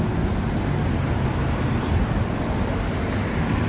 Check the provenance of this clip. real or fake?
real